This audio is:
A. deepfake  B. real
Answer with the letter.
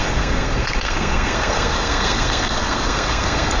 A